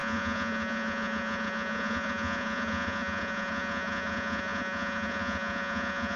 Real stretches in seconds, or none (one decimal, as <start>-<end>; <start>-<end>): none